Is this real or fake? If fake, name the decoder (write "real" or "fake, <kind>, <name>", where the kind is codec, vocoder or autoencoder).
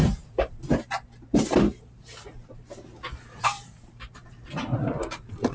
fake, vocoder, BigVGAN v2